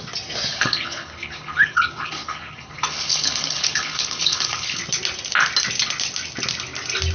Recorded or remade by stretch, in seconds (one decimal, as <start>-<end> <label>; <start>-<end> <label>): 0.0-0.5 recorded; 0.5-4.8 remade; 4.8-7.1 recorded